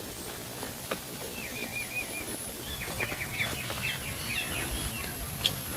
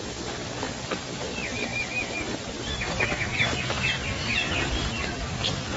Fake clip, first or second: first